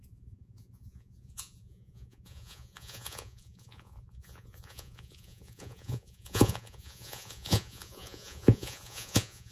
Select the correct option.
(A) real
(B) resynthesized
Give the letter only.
B